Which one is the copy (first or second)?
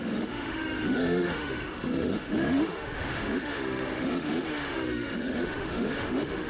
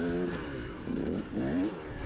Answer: first